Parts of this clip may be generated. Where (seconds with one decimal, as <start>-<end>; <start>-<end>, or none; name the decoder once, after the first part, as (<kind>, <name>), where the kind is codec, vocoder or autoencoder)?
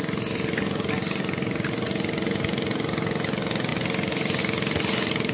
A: none